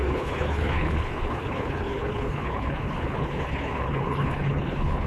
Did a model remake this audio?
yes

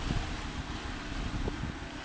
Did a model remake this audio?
no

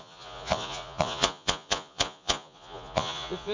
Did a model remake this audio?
yes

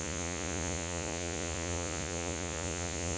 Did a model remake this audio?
yes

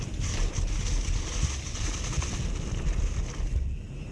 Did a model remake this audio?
no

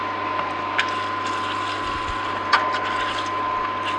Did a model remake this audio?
no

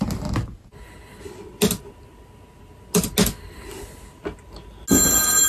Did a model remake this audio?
no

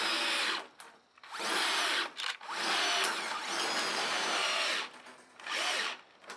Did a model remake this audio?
no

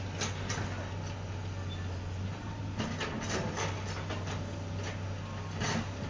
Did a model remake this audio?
no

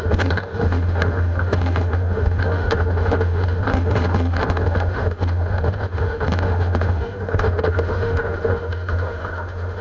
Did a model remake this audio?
yes